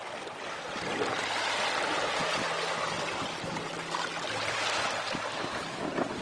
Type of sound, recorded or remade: recorded